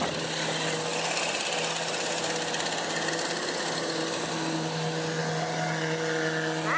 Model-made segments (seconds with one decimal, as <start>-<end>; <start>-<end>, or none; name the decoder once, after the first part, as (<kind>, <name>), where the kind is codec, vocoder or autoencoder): none